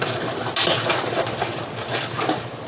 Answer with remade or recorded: recorded